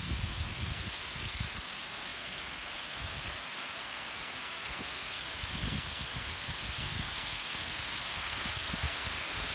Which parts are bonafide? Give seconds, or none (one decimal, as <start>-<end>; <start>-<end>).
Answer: none